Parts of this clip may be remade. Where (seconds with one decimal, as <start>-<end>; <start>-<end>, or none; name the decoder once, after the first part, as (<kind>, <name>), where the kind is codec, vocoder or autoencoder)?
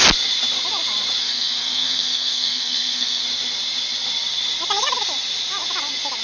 1.2-3.2 (codec, SNAC)